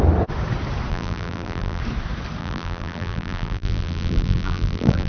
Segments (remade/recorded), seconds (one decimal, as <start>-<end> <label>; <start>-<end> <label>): 0.0-0.9 recorded; 0.9-1.8 remade; 1.8-2.4 recorded; 2.4-5.1 remade